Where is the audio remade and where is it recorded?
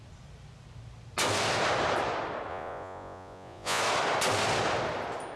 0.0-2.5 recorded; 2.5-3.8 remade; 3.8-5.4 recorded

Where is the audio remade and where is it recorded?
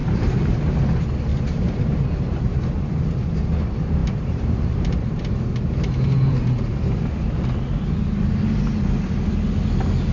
0.0-0.8 remade; 0.8-1.3 recorded; 1.3-1.8 remade; 1.8-4.0 recorded; 4.0-7.0 remade; 7.0-10.1 recorded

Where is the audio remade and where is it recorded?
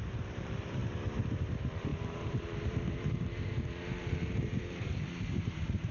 0.0-0.8 remade; 0.8-1.4 recorded; 1.4-5.9 remade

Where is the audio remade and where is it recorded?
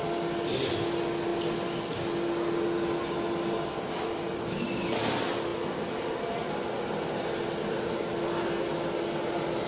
0.0-9.7 recorded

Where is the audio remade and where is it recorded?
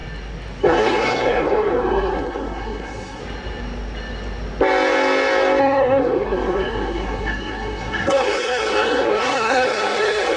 0.0-0.6 recorded; 0.6-3.2 remade; 3.2-5.6 recorded; 5.6-10.4 remade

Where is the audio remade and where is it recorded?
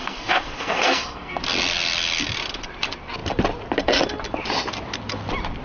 0.0-1.4 remade; 1.4-5.6 recorded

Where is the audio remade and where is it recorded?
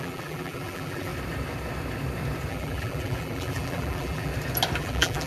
0.0-1.1 remade; 1.1-2.5 recorded; 2.5-4.3 remade; 4.3-4.8 recorded; 4.8-5.3 remade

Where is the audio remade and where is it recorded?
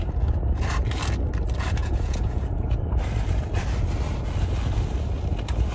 0.0-1.8 recorded; 1.8-2.8 remade; 2.8-5.7 recorded